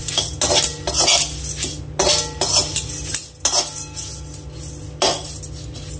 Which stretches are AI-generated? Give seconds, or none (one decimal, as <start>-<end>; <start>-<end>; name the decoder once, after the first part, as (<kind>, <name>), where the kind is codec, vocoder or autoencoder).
none